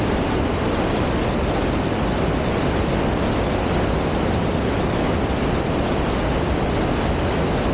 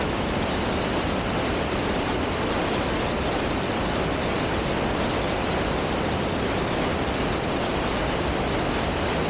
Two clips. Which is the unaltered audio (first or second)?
first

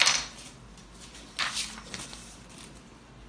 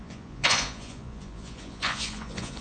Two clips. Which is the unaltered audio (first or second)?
first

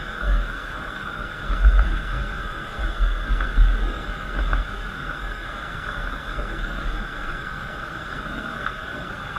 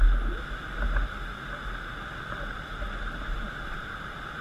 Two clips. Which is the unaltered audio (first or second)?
second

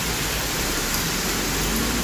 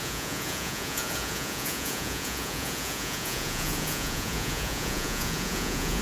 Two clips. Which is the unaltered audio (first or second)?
first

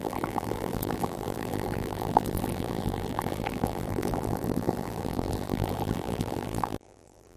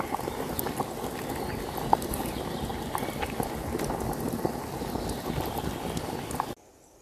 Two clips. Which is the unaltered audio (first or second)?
second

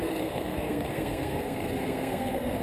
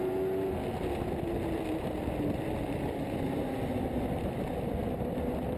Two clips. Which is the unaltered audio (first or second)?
second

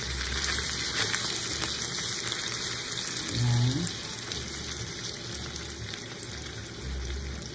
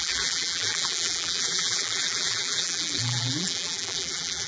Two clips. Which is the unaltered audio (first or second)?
first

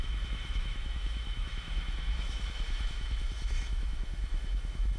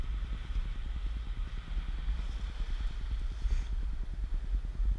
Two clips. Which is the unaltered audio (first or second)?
second